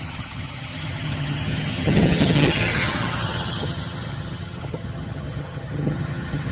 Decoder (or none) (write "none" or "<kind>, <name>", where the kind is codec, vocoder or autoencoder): vocoder, HiFi-GAN